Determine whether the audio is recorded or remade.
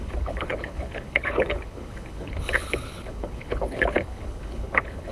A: remade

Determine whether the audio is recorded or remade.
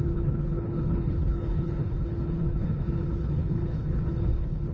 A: remade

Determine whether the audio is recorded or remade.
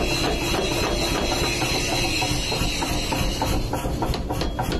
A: recorded